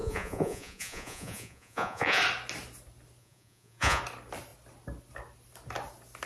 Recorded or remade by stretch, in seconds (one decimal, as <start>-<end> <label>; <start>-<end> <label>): 0.0-2.2 remade; 2.2-3.2 recorded; 3.2-4.0 remade; 4.0-6.3 recorded